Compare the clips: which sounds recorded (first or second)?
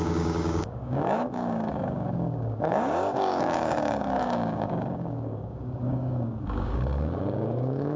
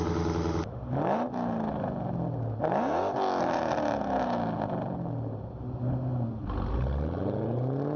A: second